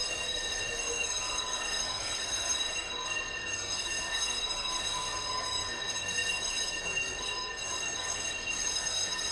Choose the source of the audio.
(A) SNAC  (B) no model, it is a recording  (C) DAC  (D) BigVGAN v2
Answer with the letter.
A